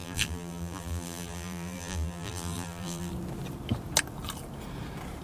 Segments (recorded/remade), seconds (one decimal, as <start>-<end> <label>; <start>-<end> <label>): 0.0-3.1 remade; 3.1-5.2 recorded